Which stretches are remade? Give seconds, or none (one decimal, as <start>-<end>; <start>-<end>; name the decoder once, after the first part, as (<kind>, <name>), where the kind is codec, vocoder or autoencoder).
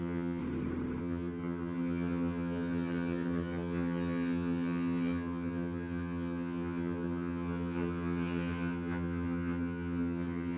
0.0-0.4 (vocoder, HiFi-GAN); 1.0-10.6